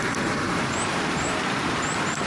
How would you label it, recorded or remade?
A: recorded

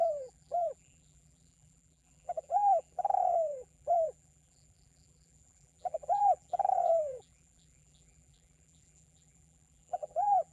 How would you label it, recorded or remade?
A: remade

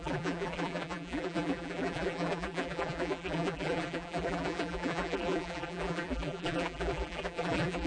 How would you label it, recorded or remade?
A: remade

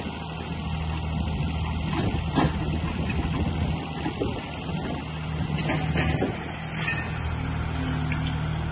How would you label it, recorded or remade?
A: recorded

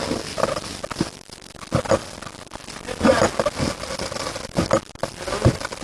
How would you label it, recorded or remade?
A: recorded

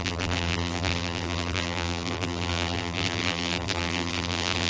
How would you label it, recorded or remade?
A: remade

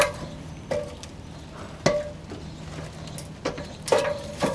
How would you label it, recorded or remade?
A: recorded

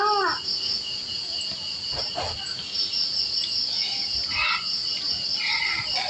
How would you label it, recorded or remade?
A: recorded